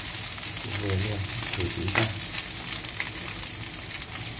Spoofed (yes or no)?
no